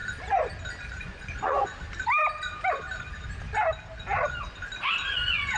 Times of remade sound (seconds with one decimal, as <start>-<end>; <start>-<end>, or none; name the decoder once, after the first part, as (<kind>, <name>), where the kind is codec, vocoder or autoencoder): 1.0-1.7 (vocoder, Vocos); 5.1-5.6